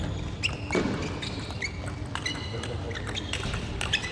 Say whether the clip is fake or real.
real